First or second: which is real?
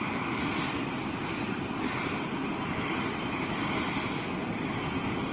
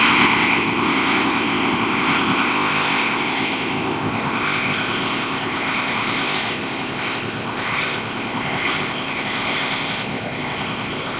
first